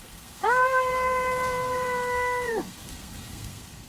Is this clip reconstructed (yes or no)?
yes